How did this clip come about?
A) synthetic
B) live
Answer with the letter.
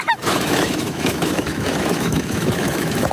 A